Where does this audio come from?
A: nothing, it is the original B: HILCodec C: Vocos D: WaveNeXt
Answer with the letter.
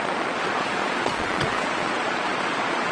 C